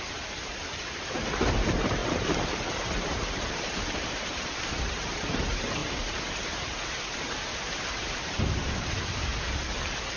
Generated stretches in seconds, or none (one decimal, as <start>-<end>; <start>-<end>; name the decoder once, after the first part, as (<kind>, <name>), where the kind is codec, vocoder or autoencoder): 0.0-9.3 (vocoder, BigVGAN v2)